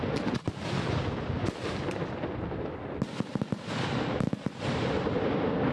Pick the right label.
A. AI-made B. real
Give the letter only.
B